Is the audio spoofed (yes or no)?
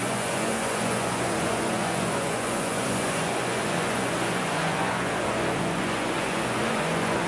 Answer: yes